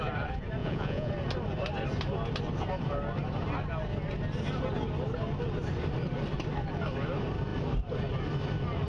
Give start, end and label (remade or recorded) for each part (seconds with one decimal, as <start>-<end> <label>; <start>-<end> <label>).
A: 0.0-0.6 recorded; 0.6-1.1 remade; 1.1-8.9 recorded